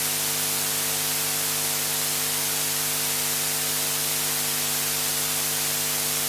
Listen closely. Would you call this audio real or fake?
real